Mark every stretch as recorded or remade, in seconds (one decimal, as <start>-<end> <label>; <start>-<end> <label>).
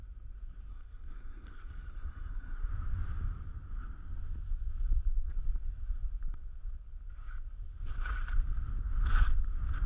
0.0-0.7 recorded; 0.7-2.7 remade; 2.7-9.9 recorded